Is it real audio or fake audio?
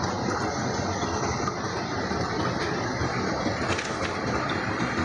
real